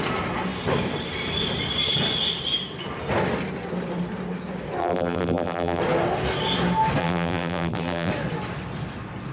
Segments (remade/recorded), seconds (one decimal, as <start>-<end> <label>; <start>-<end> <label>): 0.0-4.8 recorded; 4.8-5.8 remade; 5.8-7.0 recorded; 7.0-8.1 remade; 8.1-9.3 recorded